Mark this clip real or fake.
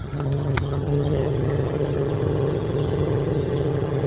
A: fake